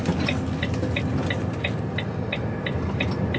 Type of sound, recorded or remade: recorded